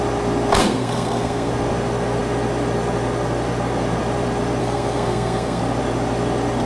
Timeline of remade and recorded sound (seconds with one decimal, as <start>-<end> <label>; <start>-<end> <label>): 0.0-0.6 recorded; 0.6-1.5 remade; 1.5-4.6 recorded; 4.6-5.6 remade; 5.6-6.7 recorded